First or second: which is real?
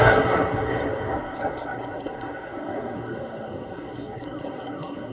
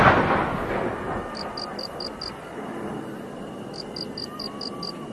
second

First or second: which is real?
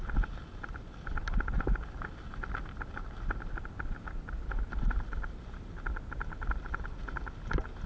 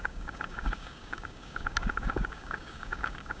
first